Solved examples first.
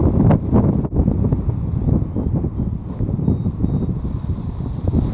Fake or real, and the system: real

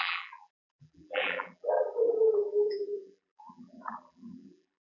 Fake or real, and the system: fake, vocoder, BigVGAN v2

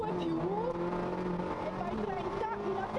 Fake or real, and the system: real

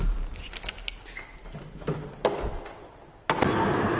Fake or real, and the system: real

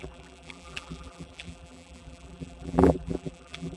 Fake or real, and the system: fake, vocoder, BigVGAN v2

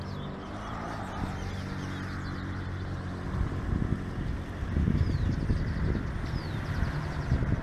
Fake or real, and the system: real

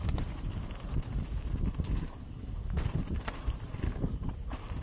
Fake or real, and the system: fake, vocoder, BigVGAN v2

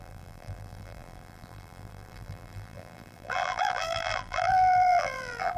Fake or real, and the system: fake, vocoder, BigVGAN v2